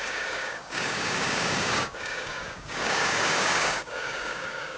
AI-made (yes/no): yes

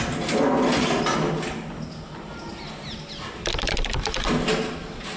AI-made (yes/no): no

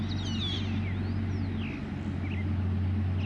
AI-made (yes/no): no